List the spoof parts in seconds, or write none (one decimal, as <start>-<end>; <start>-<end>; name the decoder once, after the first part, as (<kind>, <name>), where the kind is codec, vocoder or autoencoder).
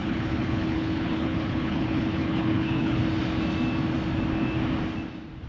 0.0-3.0 (codec, HILCodec)